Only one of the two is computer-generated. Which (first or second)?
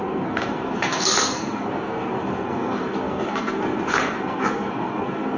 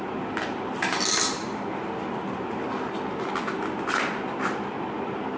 first